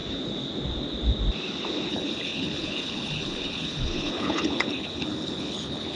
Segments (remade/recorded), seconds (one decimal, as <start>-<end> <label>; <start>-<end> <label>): 0.0-1.9 recorded; 1.9-6.0 remade

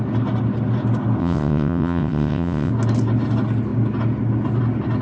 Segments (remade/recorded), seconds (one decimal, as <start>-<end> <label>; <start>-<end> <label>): 0.0-1.2 recorded; 1.2-2.7 remade; 2.7-5.0 recorded

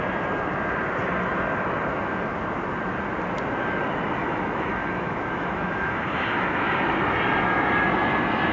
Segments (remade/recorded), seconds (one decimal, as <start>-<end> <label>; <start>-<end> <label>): 0.0-4.2 recorded; 4.2-6.6 remade; 6.6-8.5 recorded

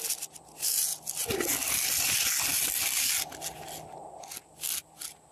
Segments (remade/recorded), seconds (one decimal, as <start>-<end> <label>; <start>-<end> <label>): 0.0-5.3 recorded

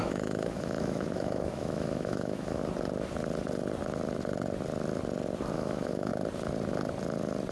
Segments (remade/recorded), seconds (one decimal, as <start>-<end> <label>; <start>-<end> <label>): 0.0-2.6 remade; 2.6-5.5 recorded; 5.5-6.1 remade; 6.1-7.5 recorded

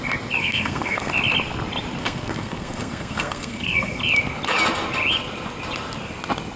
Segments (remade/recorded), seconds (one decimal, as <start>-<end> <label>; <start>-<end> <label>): 0.0-0.4 recorded; 0.4-1.1 remade; 1.1-2.0 recorded; 2.0-4.0 remade; 4.0-6.6 recorded

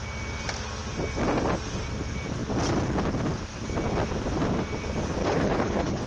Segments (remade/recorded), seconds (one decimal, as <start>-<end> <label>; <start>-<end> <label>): 0.0-5.2 recorded; 5.2-6.1 remade